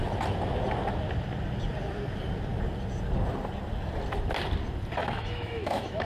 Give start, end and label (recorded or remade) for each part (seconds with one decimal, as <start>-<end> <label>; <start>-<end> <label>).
0.0-5.0 recorded; 5.0-6.1 remade